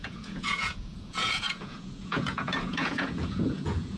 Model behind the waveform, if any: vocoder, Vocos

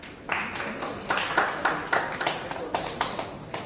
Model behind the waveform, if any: none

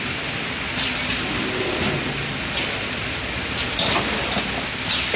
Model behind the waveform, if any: none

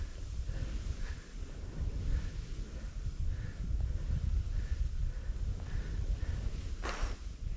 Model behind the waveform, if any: none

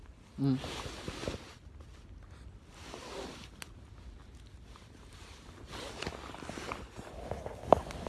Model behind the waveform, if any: none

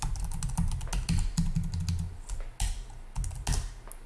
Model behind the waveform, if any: none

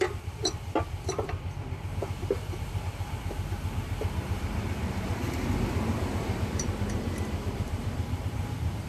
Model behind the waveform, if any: vocoder, BigVGAN v2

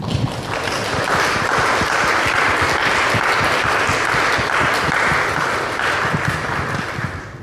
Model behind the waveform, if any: none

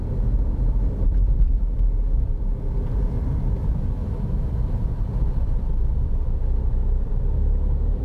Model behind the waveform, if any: vocoder, BigVGAN v2